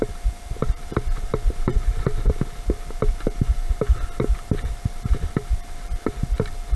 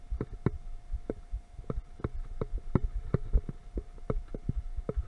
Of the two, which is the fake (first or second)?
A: first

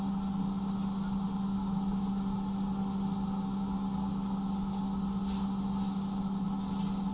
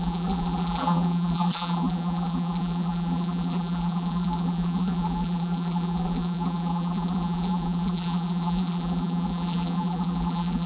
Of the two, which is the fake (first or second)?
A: second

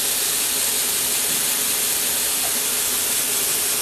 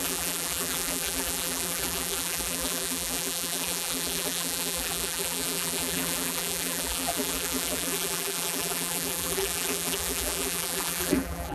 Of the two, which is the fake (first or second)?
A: second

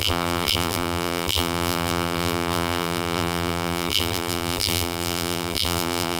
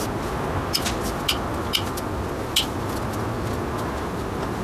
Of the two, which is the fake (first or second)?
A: first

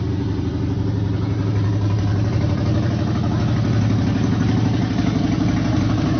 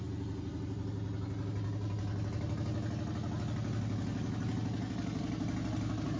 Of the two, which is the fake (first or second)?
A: first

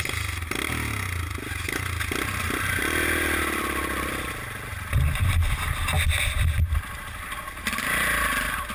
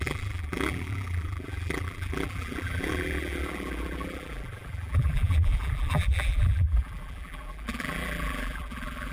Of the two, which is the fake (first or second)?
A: second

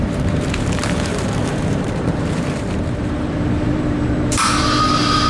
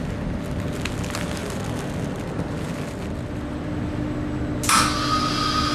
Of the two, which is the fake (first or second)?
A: first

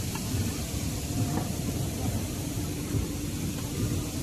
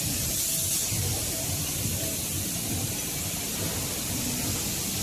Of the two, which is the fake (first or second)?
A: first